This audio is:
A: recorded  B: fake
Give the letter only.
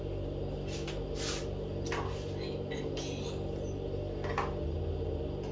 A